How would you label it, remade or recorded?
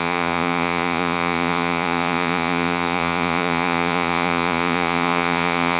remade